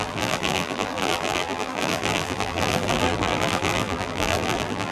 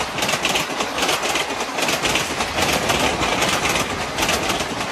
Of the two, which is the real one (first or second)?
second